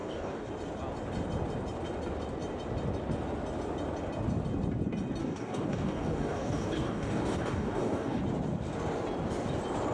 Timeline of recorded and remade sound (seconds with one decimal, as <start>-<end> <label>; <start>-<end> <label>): 0.0-0.5 remade; 0.5-5.2 recorded; 5.2-8.2 remade; 8.2-9.9 recorded